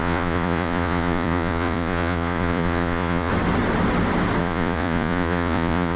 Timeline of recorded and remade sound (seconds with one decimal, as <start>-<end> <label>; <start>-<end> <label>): 0.0-3.3 remade; 3.3-4.4 recorded; 4.4-6.0 remade